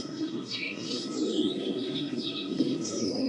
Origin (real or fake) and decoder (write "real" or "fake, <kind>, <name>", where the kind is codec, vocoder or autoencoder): fake, codec, SNAC